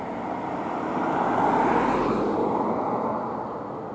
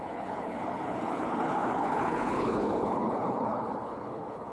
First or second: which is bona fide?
first